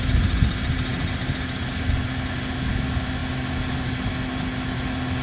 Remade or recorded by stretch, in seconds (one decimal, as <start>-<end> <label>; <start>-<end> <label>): 0.0-5.2 recorded